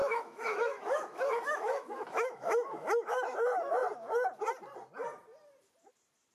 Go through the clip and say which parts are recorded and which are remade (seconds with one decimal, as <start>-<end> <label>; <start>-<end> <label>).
0.0-3.8 remade; 3.8-6.3 recorded